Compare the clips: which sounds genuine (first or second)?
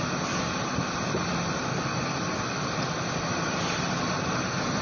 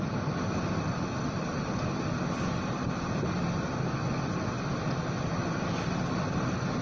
second